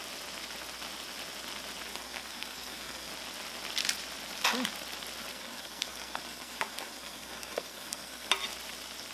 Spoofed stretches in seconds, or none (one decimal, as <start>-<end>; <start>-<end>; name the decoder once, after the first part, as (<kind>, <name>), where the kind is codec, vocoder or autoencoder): 1.9-3.1 (codec, SNAC); 5.3-8.3